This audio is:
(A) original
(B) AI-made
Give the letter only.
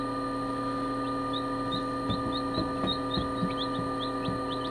A